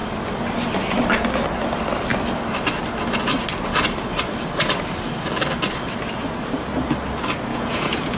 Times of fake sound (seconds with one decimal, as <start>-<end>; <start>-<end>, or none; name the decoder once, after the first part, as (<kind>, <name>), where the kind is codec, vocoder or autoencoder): 7.5-8.2 (vocoder, Vocos)